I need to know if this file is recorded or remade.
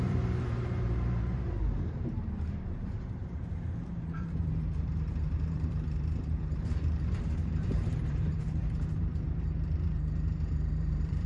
remade